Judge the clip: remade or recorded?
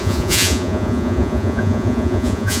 remade